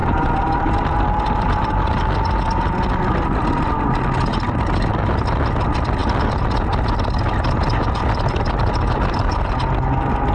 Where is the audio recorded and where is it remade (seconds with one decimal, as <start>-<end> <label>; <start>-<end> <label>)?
0.0-2.0 remade; 2.0-10.3 recorded

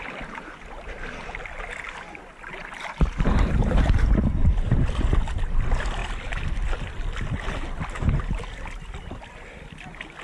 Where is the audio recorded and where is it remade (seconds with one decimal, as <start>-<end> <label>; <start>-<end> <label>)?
0.0-2.6 recorded; 2.6-5.0 remade; 5.0-10.2 recorded